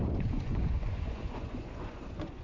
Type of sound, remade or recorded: remade